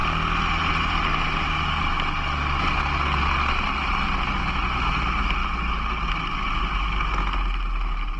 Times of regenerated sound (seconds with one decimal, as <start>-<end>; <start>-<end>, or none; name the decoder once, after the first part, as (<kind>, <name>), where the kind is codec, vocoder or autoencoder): none